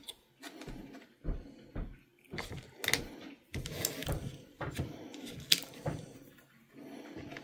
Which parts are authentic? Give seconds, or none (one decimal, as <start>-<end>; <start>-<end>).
0.0-4.0; 6.2-7.4